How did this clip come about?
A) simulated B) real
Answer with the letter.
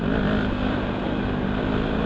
B